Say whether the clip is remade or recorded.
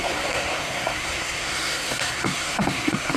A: remade